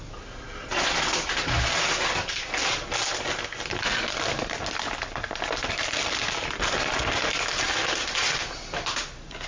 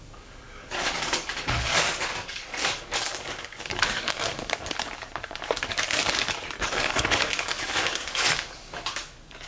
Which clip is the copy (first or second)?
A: second